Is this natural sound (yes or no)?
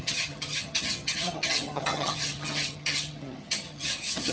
no